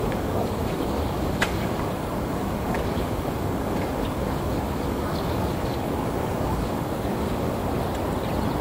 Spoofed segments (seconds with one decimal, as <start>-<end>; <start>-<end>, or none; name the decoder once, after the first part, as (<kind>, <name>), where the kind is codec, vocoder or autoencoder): 0.0-7.6 (codec, DAC)